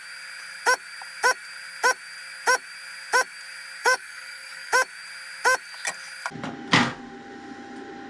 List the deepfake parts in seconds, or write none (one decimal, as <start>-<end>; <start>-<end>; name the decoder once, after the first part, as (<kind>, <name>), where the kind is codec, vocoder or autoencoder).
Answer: 3.8-4.7 (codec, DAC)